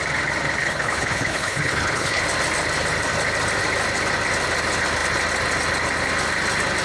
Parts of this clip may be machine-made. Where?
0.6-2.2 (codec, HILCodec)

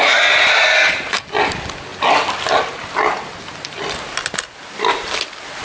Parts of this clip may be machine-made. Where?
none

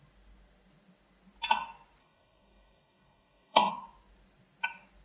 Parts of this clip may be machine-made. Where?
2.0-3.7 (codec, DAC)

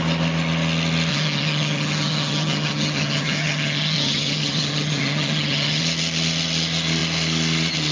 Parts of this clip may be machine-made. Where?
1.1-5.8 (vocoder, HiFi-GAN)

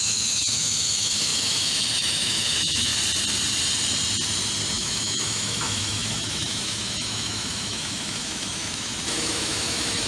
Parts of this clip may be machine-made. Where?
0.0-2.9 (autoencoder, DAC-VAE); 4.7-10.1

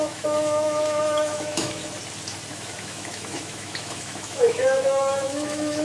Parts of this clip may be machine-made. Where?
0.0-1.8 (autoencoder, DAC-VAE); 2.5-5.8

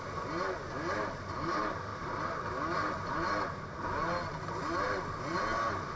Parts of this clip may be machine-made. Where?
none

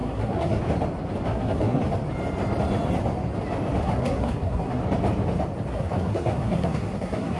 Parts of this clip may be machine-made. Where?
0.0-0.6 (codec, SNAC); 1.3-1.8; 3.8-4.8; 5.7-7.4